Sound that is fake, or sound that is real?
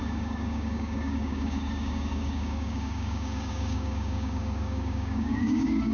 fake